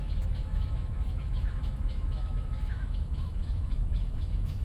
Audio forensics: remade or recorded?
remade